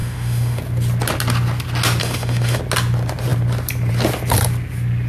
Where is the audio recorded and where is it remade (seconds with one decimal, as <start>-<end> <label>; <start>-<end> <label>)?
0.0-0.6 remade; 0.6-2.0 recorded; 2.0-2.6 remade; 2.6-5.1 recorded

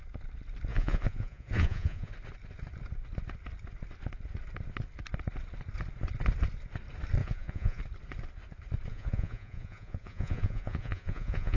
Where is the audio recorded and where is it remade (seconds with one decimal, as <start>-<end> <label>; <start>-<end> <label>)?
0.0-0.7 recorded; 0.7-2.1 remade; 2.1-7.2 recorded; 7.2-7.8 remade; 7.8-8.9 recorded; 8.9-11.6 remade

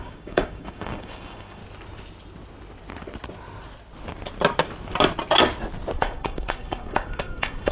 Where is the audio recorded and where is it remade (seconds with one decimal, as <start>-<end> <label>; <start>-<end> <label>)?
0.0-1.6 remade; 1.6-6.0 recorded; 6.0-7.7 remade

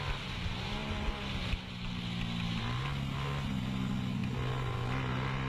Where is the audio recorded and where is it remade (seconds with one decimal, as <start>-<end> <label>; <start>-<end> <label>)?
0.0-5.5 recorded

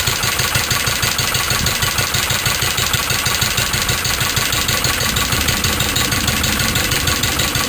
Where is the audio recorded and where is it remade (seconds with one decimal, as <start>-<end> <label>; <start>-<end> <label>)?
0.0-7.7 recorded

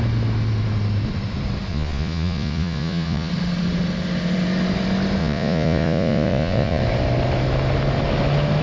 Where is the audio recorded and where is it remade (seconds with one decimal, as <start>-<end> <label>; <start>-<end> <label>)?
0.0-1.7 recorded; 1.7-3.3 remade; 3.3-5.2 recorded; 5.2-6.8 remade; 6.8-8.6 recorded

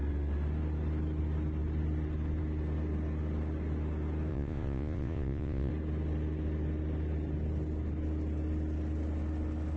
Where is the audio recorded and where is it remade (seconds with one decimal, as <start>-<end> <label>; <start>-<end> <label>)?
0.0-4.3 recorded; 4.3-5.7 remade; 5.7-9.8 recorded